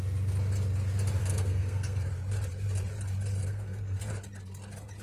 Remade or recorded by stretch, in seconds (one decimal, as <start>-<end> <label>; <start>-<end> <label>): 0.0-1.2 recorded; 1.2-2.1 remade; 2.1-3.4 recorded; 3.4-4.1 remade; 4.1-5.0 recorded

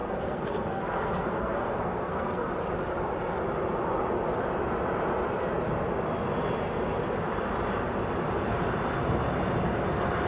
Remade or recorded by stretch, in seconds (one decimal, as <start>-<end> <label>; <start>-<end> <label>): 0.0-2.5 remade; 2.5-10.3 recorded

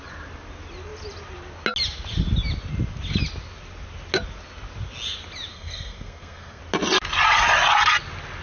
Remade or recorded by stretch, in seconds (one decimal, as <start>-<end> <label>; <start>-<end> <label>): 0.0-5.5 recorded; 5.5-6.6 remade; 6.6-8.4 recorded

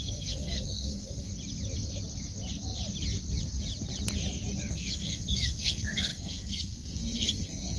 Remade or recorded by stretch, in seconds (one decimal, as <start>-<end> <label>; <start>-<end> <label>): 0.0-1.3 remade; 1.3-4.7 recorded; 4.7-7.8 remade

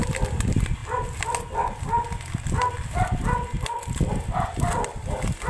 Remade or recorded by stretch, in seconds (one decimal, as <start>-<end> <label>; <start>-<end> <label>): 0.0-5.5 recorded

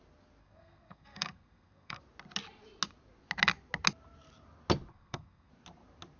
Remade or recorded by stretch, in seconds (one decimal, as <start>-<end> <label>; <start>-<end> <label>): 0.0-0.4 recorded; 0.4-2.0 remade; 2.0-4.9 recorded; 4.9-5.5 remade; 5.5-6.2 recorded